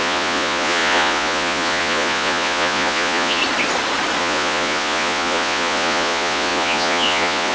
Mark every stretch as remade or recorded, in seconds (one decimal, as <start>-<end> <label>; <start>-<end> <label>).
0.0-3.4 remade; 3.4-4.2 recorded; 4.2-7.5 remade